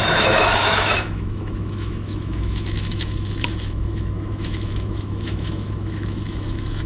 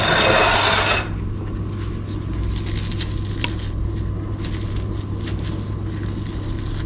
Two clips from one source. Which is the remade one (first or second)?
first